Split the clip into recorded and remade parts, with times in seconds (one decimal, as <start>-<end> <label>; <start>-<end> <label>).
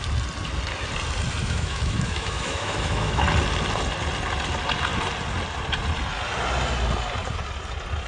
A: 0.0-1.4 recorded; 1.4-3.2 remade; 3.2-8.1 recorded